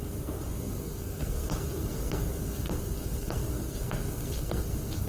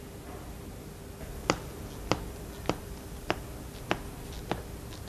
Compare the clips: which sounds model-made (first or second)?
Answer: first